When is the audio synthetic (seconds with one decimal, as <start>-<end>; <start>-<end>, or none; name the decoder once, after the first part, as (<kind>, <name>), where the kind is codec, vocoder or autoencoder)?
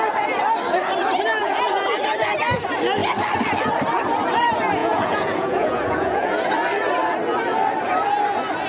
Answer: 1.4-2.0 (vocoder, Vocos); 4.8-6.5